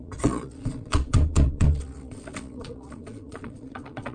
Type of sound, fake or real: fake